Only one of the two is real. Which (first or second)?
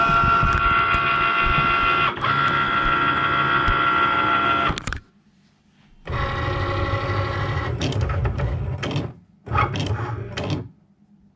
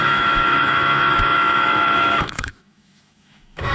first